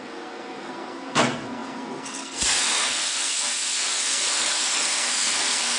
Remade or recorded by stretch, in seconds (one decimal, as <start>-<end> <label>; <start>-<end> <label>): 0.0-5.8 remade